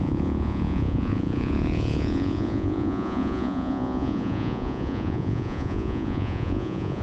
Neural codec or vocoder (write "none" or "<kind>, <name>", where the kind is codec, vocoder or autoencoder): vocoder, Vocos